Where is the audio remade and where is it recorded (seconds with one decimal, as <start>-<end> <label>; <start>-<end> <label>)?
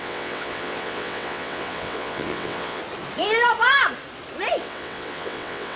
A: 0.0-2.8 remade; 2.8-4.6 recorded; 4.6-5.8 remade